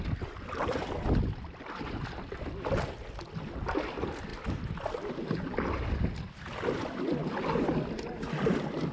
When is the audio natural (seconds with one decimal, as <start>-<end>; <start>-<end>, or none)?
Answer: 0.0-8.9